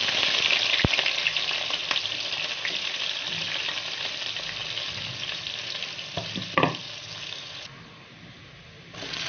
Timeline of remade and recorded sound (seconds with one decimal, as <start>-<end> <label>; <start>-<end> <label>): 0.0-9.3 recorded